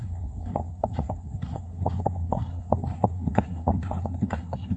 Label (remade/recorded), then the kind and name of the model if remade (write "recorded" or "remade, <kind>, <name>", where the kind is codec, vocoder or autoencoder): remade, codec, SNAC